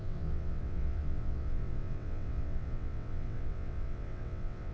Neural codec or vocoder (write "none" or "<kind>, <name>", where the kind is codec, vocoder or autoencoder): vocoder, WaveNeXt